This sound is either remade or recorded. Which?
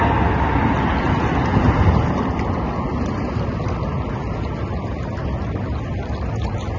recorded